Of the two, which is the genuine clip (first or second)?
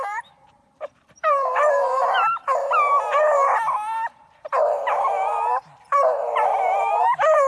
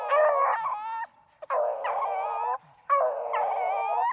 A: second